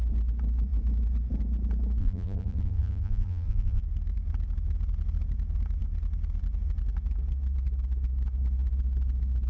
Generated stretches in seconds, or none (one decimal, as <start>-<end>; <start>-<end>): 2.0-3.8